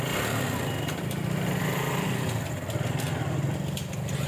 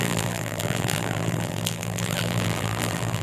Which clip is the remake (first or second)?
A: second